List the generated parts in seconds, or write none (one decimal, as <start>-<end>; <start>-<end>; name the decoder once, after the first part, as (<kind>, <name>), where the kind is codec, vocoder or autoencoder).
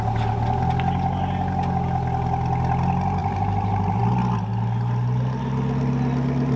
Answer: 3.2-4.0 (vocoder, BigVGAN v2)